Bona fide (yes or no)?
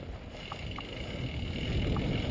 yes